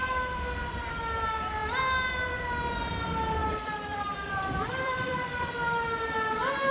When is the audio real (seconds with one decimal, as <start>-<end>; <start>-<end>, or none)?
0.0-3.4; 5.5-6.7